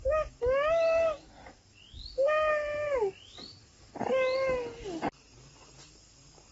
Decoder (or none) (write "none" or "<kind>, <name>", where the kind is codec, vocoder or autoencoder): none